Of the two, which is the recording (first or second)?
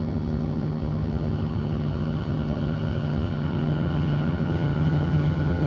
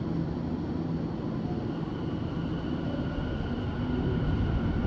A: second